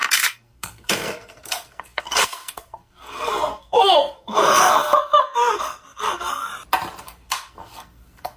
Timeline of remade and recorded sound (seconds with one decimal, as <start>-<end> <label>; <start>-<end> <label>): 0.0-6.5 remade; 6.5-7.0 recorded; 7.0-8.4 remade